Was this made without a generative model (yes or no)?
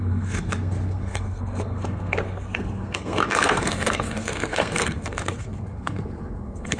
no